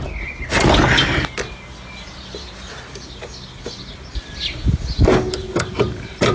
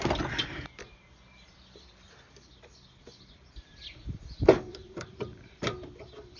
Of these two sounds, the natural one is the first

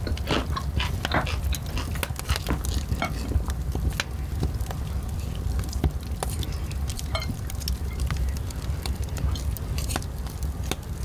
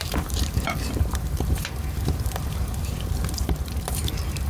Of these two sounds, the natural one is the first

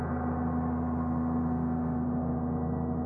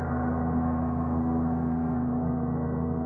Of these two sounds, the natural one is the first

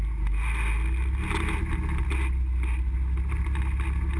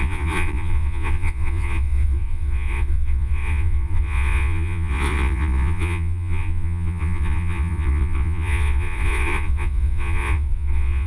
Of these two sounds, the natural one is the first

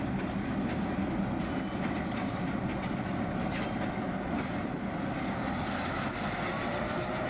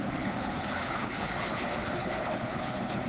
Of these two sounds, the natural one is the first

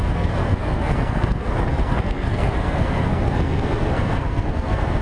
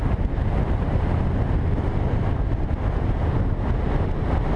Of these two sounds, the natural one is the second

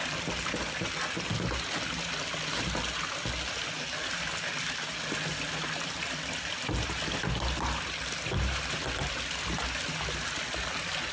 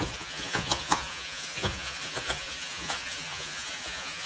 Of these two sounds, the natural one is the first